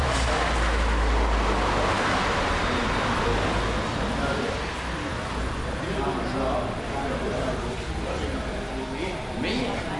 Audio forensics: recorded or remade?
recorded